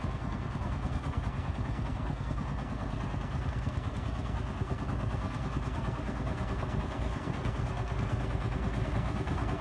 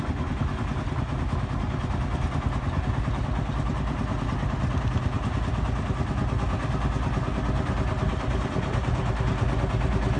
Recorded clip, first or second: second